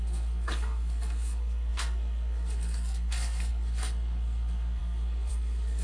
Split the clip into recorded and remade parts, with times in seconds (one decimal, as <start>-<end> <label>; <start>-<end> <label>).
0.0-5.8 remade